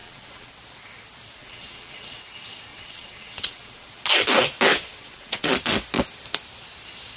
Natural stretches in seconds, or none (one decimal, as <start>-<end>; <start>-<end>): 0.5-1.4; 2.2-2.7; 4.0-4.7; 5.5-7.2